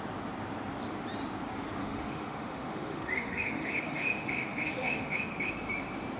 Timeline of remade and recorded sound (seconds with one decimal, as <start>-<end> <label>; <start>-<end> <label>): 0.0-1.8 recorded; 1.8-5.5 remade; 5.5-6.2 recorded